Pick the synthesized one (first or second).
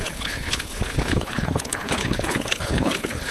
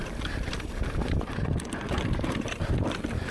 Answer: first